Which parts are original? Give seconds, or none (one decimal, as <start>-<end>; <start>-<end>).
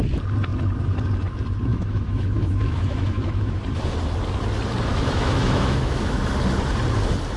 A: 0.0-1.7; 3.6-4.9; 6.3-7.4